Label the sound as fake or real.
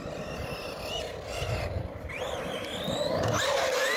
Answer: fake